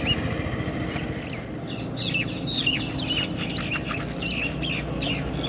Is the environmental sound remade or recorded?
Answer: recorded